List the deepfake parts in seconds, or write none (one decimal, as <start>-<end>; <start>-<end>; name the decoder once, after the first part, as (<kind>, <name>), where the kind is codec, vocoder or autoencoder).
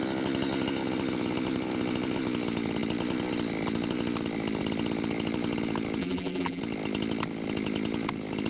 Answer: 6.0-6.6 (vocoder, BigVGAN v2)